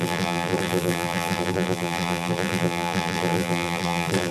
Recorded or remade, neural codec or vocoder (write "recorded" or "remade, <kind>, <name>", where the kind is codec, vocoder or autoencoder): remade, vocoder, BigVGAN v2